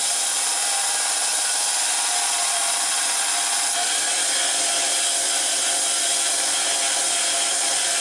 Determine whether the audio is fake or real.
real